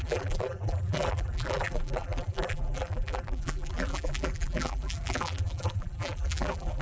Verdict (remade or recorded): remade